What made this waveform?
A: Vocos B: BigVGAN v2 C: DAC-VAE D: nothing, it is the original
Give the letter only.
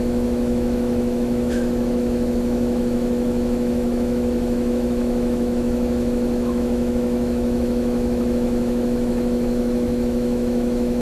C